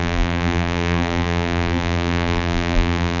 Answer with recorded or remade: remade